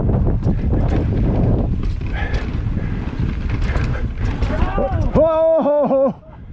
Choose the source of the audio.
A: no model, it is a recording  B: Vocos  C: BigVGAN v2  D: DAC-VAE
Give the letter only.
A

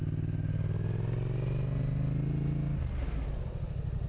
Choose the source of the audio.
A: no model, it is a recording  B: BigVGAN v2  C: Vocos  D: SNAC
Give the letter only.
A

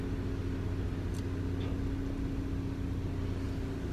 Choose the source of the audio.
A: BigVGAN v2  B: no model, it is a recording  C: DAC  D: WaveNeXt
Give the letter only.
B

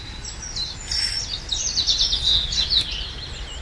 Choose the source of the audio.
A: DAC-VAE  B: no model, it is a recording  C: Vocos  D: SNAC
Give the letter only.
B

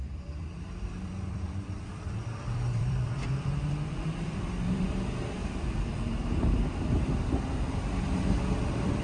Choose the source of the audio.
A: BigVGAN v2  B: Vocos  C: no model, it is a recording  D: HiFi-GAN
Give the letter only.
A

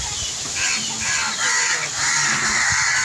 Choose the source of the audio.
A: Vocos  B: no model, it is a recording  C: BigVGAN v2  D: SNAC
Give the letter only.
C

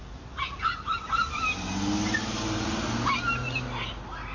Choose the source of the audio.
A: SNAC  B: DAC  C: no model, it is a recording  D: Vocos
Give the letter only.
C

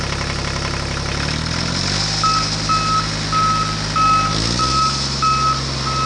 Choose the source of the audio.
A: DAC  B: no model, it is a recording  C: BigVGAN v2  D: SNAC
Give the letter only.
B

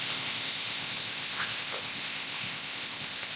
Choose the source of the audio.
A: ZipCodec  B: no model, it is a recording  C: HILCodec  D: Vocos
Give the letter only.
A